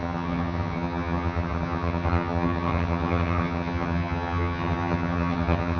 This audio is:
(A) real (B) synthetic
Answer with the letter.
B